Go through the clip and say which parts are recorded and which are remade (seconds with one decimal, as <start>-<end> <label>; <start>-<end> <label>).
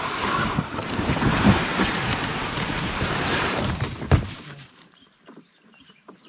0.0-1.7 remade; 1.7-2.3 recorded; 2.3-6.3 remade